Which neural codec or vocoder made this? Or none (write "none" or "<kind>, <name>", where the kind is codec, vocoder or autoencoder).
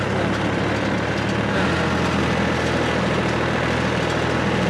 none